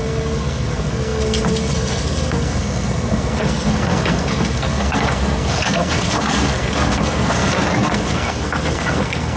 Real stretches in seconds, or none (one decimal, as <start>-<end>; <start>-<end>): none